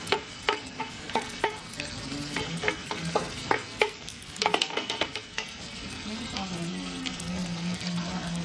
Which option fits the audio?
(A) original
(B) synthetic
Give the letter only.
B